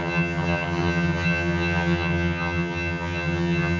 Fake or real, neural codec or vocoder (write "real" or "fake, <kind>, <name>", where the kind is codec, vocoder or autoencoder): fake, vocoder, HiFi-GAN